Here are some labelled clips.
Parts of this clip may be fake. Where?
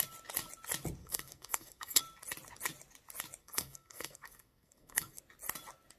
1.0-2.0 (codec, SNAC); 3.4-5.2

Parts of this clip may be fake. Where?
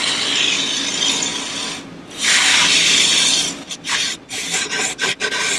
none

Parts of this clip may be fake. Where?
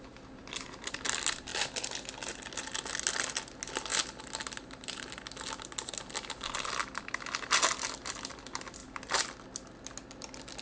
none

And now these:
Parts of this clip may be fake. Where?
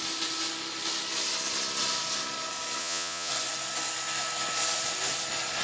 2.8-3.3 (vocoder, Vocos)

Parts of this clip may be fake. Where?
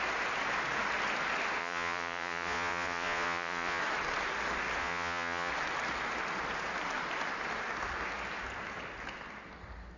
1.6-3.8 (vocoder, Vocos); 4.8-5.5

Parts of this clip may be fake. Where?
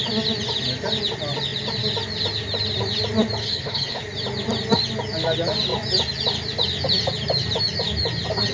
3.4-4.0 (codec, HILCodec)